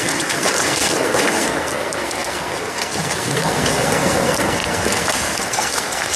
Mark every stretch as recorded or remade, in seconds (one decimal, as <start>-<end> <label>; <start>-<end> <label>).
0.0-6.2 remade